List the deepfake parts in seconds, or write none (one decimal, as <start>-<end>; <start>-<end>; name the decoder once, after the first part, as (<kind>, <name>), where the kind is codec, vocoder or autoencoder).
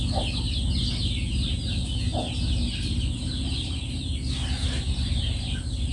none